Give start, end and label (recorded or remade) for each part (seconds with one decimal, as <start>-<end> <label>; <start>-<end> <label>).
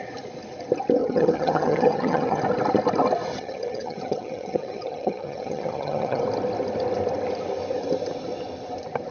0.0-1.0 recorded; 1.0-2.4 remade; 2.4-3.3 recorded; 3.3-6.2 remade; 6.2-9.1 recorded